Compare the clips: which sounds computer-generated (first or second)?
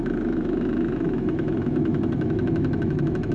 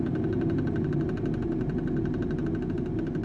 first